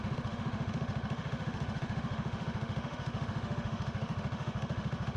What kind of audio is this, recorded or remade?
remade